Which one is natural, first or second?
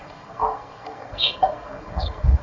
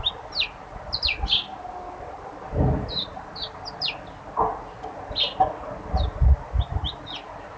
second